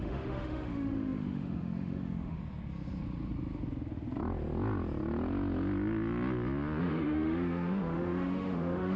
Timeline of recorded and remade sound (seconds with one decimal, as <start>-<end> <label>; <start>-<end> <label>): 0.0-2.4 remade; 2.4-6.8 recorded; 6.8-9.0 remade